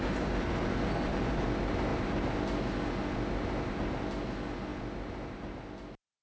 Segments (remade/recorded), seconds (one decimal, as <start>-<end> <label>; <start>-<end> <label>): 0.0-6.2 recorded